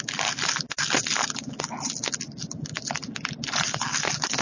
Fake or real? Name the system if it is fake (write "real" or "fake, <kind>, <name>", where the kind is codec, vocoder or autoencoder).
real